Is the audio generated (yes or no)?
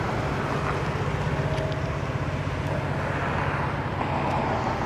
no